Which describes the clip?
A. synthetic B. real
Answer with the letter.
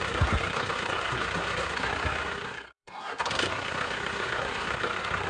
A